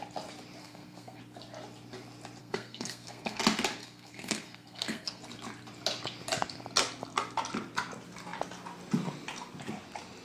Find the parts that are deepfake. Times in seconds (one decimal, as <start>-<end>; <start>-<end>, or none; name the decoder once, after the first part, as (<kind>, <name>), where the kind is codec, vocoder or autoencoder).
0.6-1.2 (codec, SNAC); 2.4-3.4; 3.8-5.2